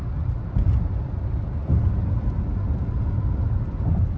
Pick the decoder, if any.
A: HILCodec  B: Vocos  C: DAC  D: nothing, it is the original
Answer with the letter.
D